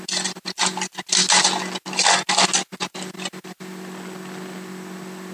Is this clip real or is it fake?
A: real